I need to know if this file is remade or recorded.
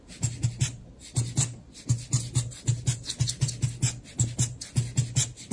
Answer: recorded